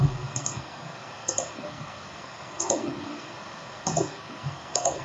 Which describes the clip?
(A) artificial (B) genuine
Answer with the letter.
A